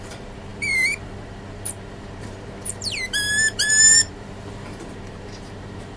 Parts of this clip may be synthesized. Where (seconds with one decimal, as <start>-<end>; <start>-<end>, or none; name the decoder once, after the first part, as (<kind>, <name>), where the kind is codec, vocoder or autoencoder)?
0.0-6.0 (vocoder, BigVGAN v2)